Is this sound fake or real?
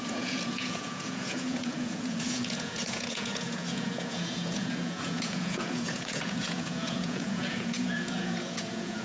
fake